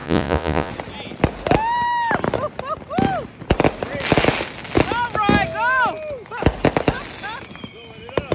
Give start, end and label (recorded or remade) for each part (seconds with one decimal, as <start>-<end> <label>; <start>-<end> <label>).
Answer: 0.0-0.7 remade; 0.7-8.3 recorded